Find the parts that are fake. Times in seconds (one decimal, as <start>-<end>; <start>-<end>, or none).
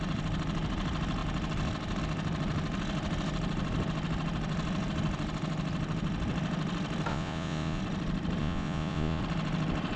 7.1-7.8; 8.4-9.2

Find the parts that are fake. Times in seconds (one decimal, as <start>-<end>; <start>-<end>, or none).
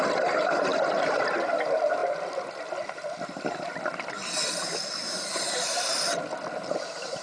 none